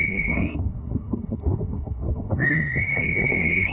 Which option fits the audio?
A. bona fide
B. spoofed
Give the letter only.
B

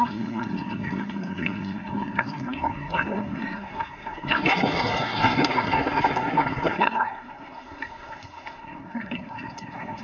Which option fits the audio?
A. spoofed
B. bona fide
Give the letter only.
A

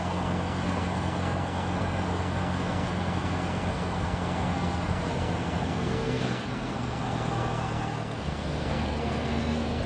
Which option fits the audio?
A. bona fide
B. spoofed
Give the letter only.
B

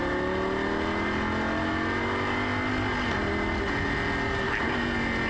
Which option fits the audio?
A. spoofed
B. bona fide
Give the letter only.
B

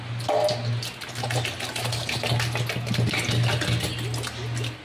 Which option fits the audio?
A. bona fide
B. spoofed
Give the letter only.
A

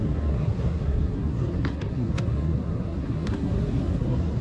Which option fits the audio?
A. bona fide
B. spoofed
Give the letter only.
B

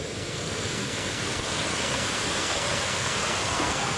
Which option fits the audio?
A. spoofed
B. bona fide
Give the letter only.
A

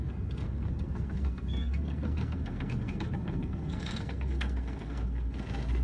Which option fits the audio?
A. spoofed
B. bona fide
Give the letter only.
A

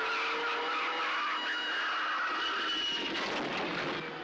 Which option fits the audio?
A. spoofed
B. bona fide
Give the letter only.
B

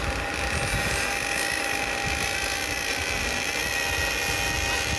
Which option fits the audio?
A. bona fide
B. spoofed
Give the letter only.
A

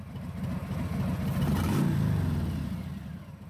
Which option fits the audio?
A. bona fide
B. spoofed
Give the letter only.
A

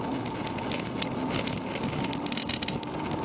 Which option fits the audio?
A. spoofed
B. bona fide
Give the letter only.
B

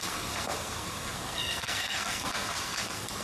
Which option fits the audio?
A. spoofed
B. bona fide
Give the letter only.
A